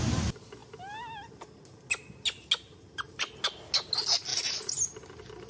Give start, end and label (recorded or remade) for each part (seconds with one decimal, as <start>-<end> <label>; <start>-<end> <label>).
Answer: 0.0-5.5 recorded